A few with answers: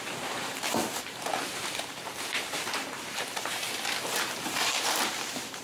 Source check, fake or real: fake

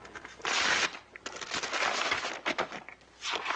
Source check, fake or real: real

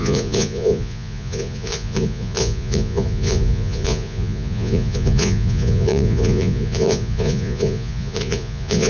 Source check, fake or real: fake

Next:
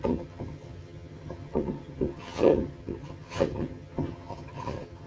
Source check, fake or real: fake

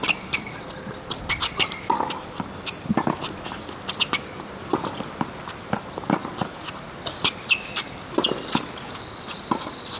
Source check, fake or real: real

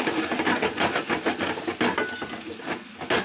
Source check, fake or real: real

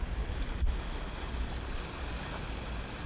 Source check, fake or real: real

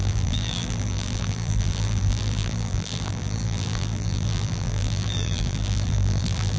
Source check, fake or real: fake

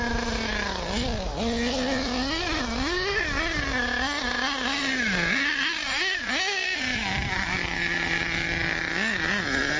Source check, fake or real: real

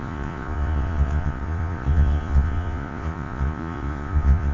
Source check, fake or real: fake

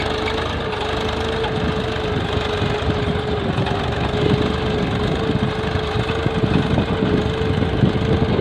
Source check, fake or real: real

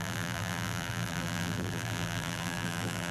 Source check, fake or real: fake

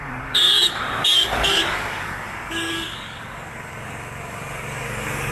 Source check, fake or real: fake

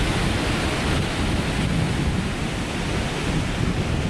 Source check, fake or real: real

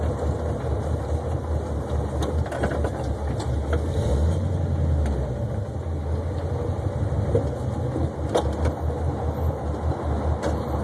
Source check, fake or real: real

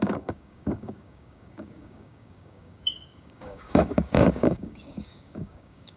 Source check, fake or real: fake